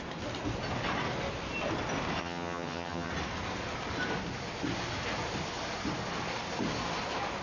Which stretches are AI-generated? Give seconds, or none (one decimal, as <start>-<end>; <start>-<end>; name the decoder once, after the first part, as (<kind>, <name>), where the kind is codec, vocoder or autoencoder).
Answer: 2.2-3.1 (vocoder, HiFi-GAN)